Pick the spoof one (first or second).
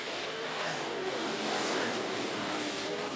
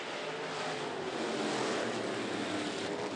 first